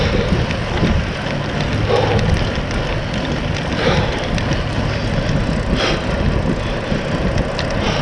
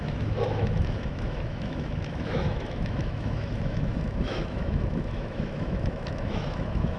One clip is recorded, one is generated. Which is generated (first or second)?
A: second